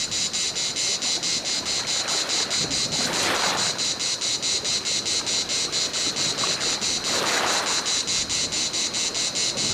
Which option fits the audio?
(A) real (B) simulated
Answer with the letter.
A